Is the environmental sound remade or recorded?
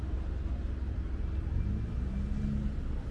recorded